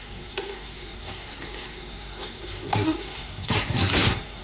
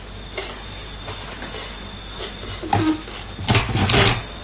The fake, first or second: first